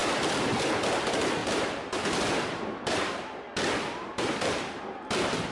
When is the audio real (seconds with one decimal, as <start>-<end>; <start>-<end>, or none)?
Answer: 0.8-1.4; 4.6-5.5